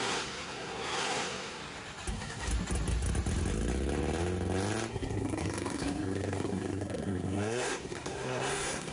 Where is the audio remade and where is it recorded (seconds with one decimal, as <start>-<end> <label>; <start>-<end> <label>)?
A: 0.0-1.6 remade; 1.6-2.1 recorded; 2.1-2.5 remade; 2.5-4.9 recorded; 4.9-8.9 remade